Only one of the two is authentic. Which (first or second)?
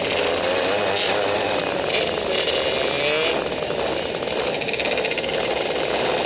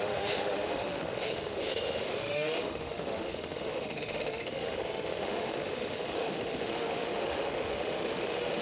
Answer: first